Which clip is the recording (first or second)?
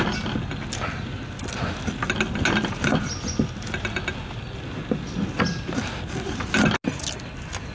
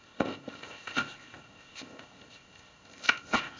first